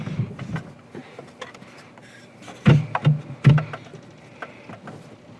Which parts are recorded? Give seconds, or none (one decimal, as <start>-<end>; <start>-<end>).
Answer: 0.0-1.0; 3.5-5.4